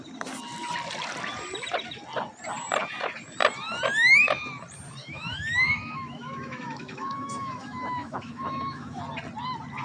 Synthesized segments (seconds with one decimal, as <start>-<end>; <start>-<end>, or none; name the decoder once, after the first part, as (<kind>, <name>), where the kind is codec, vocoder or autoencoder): 5.0-9.0 (autoencoder, DAC-VAE)